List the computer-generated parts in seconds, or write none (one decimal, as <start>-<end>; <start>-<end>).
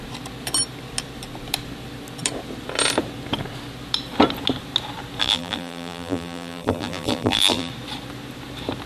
5.2-7.7